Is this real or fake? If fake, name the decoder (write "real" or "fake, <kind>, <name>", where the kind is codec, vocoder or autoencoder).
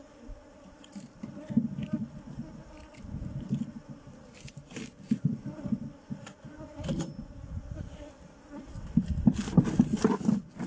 real